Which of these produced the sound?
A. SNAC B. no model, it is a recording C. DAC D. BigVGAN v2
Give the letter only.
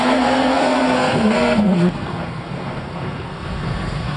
A